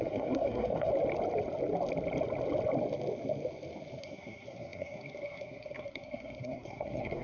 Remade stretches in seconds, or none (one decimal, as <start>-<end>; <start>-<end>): 0.0-0.9; 4.0-7.2